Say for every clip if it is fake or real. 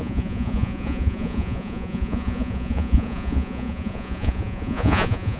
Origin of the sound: fake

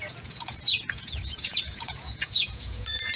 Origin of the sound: fake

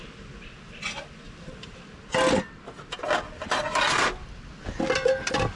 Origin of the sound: real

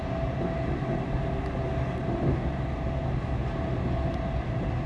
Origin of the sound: real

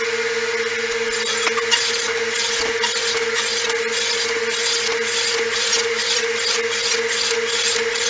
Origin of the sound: real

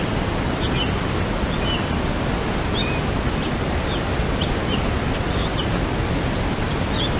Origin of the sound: real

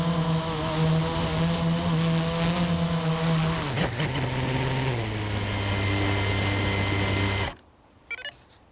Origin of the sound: real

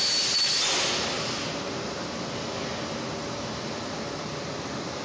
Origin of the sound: real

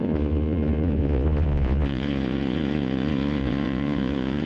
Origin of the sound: fake